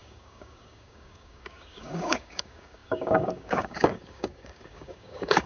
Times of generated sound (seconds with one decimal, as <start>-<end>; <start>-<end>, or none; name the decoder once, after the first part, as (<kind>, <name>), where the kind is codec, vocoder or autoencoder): 0.0-5.5 (codec, DAC)